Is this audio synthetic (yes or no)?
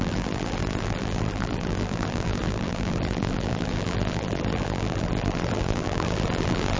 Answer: yes